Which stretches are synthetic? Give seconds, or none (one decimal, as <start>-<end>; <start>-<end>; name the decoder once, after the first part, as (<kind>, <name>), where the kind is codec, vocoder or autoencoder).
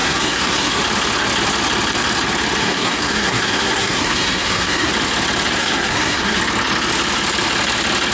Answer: 0.0-0.8 (codec, SNAC); 2.6-4.9; 5.6-6.4